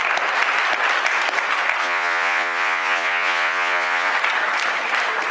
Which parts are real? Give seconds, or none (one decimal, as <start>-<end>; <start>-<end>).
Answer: 0.0-1.8; 4.1-5.3